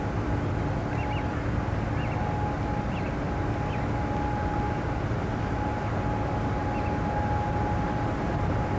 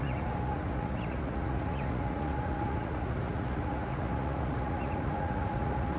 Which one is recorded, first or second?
first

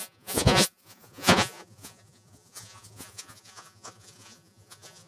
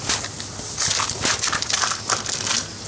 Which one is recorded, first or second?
second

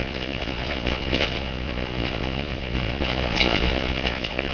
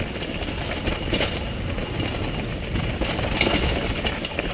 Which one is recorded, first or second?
second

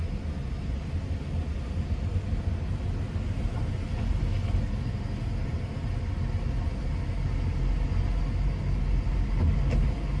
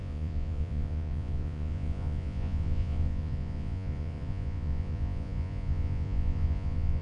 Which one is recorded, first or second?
first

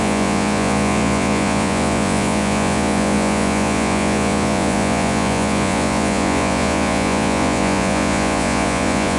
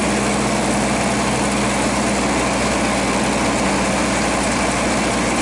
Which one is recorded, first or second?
second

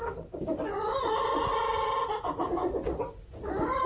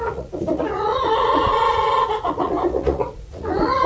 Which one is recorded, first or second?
first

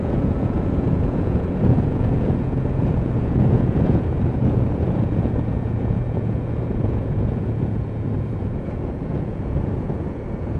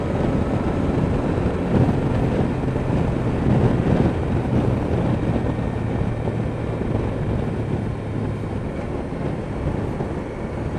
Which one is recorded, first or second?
second